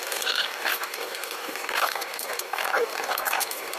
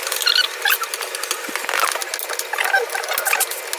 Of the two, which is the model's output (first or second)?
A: first